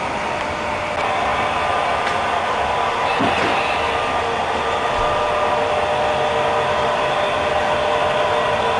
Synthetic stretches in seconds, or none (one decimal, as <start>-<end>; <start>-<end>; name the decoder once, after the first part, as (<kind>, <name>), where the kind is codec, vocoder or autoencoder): none